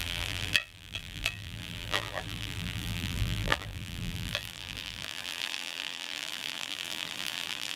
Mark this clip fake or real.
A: fake